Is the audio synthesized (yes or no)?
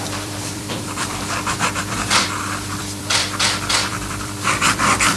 yes